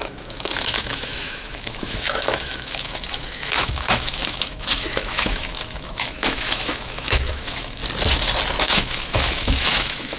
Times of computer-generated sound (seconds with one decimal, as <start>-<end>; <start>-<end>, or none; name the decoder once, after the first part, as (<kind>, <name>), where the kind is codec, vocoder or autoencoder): 0.0-7.8 (autoencoder, DAC-VAE); 8.6-10.2